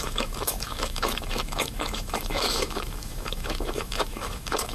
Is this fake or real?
fake